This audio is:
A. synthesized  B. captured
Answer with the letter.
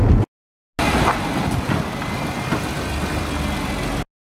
B